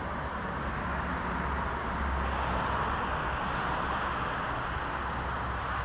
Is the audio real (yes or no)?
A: yes